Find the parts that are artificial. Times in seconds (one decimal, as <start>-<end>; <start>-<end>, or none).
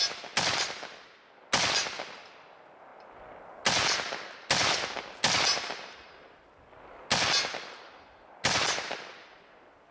none